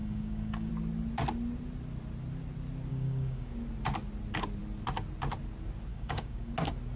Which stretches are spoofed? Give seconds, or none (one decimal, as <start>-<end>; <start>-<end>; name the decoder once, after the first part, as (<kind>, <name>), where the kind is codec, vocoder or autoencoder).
0.0-0.7 (codec, DAC); 2.9-3.5; 5.9-6.5